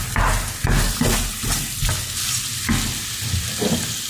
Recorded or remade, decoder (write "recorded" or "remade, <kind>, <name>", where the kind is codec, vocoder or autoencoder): recorded